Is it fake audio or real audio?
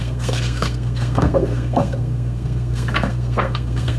fake